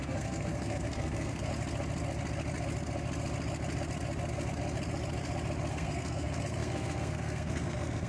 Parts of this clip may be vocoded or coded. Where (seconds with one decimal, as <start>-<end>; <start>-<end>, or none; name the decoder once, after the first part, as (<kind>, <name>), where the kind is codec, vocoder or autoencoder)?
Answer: 0.0-1.5 (codec, SNAC); 5.7-8.1

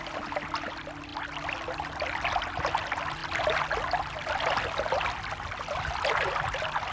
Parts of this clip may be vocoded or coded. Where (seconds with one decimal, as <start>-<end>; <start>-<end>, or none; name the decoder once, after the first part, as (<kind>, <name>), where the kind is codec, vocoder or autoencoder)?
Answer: none

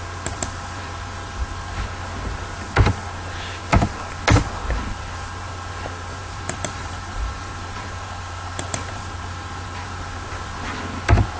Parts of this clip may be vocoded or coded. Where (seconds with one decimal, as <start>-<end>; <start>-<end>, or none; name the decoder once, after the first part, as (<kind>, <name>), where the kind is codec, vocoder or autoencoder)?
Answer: 6.2-9.0 (vocoder, BigVGAN v2)

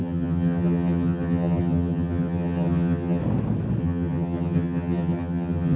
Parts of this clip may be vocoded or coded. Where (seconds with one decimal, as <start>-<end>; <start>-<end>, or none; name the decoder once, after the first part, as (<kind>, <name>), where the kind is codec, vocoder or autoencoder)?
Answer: 0.0-3.2 (vocoder, HiFi-GAN); 3.8-5.8

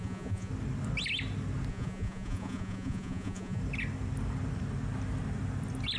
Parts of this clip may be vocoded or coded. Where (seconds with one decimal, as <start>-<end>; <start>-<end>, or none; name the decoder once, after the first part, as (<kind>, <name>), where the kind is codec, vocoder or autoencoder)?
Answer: 0.0-0.5 (vocoder, Vocos); 1.7-3.6